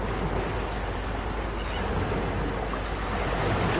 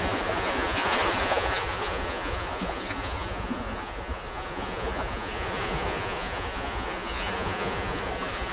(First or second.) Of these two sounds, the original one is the first